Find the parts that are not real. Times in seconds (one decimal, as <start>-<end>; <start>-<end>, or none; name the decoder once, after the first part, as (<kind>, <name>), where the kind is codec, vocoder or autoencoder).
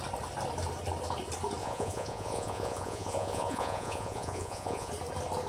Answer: 1.6-4.9 (vocoder, Vocos)